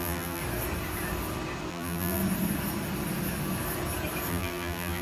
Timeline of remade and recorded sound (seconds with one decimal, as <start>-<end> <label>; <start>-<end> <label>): 0.0-0.4 remade; 0.4-1.7 recorded; 1.7-2.2 remade; 2.2-4.3 recorded; 4.3-5.0 remade